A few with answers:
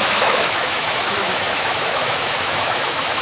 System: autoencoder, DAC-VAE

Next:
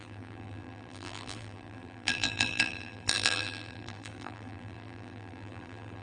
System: vocoder, BigVGAN v2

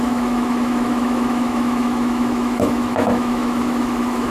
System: autoencoder, DAC-VAE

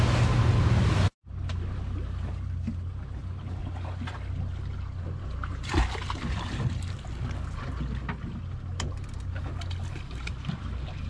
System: none